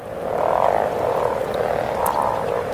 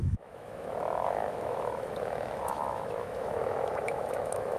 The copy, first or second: second